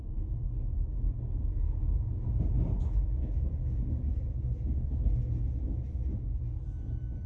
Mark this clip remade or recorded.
recorded